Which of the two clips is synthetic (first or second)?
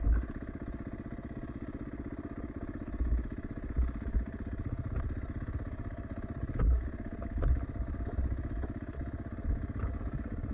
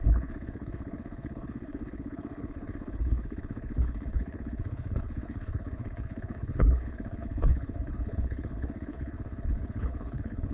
second